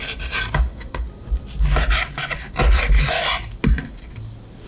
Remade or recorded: recorded